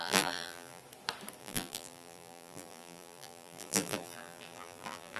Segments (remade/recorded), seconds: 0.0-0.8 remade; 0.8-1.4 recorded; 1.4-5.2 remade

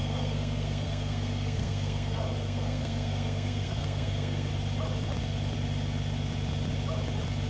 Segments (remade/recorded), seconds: 0.0-4.5 remade; 4.5-7.5 recorded

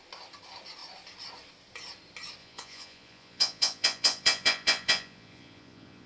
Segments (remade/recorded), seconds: 0.0-2.4 recorded; 2.4-6.1 remade

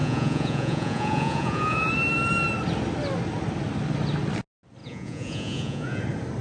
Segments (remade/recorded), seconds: 0.0-1.9 remade; 1.9-4.8 recorded; 4.8-6.0 remade; 6.0-6.4 recorded